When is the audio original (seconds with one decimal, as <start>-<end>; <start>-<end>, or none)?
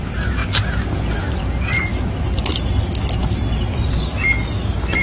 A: 0.4-1.2; 1.9-5.0